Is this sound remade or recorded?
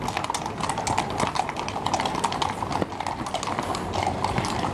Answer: recorded